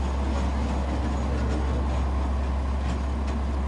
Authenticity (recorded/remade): recorded